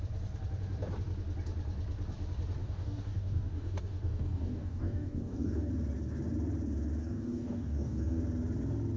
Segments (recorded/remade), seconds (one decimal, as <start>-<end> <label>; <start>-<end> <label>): 0.0-2.6 recorded; 2.6-5.7 remade; 5.7-7.0 recorded; 7.0-8.2 remade; 8.2-9.0 recorded